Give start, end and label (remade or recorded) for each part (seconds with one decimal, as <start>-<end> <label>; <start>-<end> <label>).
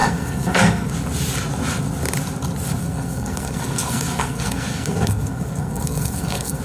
0.0-0.9 remade; 0.9-2.8 recorded; 2.8-6.6 remade